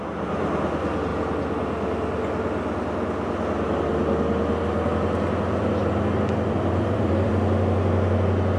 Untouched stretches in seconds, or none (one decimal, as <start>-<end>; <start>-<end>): 0.0-5.8; 7.3-8.6